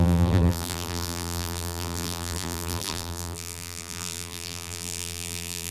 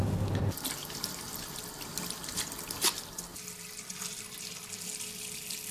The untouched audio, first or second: second